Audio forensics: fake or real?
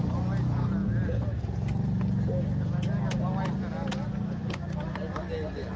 real